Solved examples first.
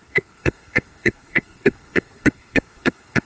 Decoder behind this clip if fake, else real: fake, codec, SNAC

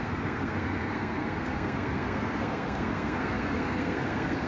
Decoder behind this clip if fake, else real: fake, codec, SNAC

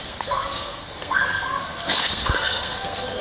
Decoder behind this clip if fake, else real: fake, codec, SNAC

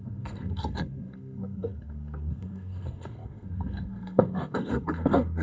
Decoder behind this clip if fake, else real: fake, codec, SNAC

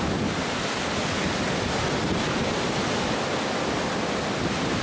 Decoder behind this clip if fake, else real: fake, vocoder, BigVGAN v2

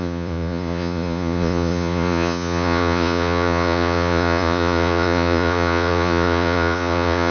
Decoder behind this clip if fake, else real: fake, vocoder, Vocos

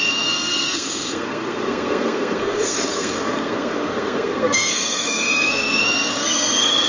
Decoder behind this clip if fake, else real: fake, codec, SNAC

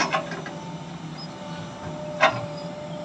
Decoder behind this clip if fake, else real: real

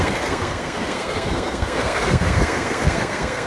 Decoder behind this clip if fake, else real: fake, codec, SNAC